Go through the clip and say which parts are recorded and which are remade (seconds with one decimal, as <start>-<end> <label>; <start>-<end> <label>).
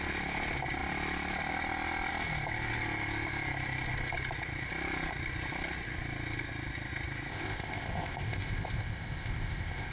0.0-7.3 recorded; 7.3-9.9 remade